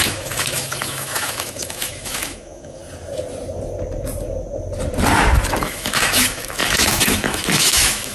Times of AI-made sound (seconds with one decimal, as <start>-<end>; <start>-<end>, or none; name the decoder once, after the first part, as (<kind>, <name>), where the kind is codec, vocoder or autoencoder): 0.0-2.8 (autoencoder, DAC-VAE); 5.6-8.1